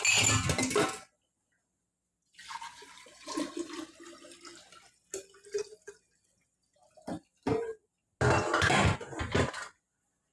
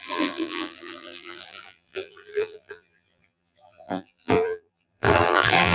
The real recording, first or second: first